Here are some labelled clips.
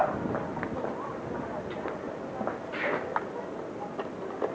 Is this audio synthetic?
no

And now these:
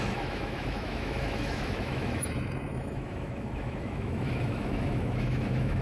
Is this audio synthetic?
yes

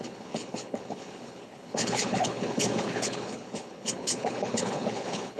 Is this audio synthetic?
yes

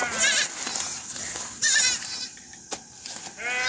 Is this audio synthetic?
no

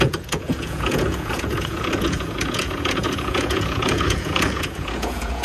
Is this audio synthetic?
yes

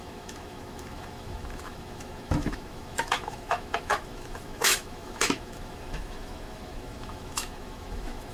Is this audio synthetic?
yes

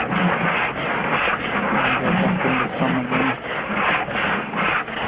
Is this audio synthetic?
no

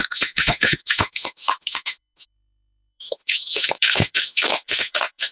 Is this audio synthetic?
yes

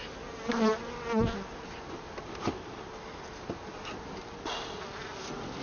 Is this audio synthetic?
no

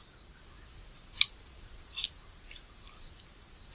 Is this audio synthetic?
no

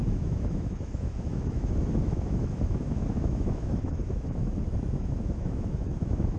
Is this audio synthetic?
yes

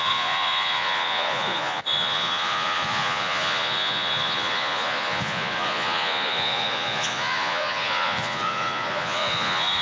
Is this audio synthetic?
yes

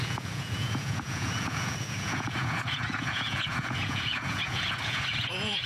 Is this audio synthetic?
yes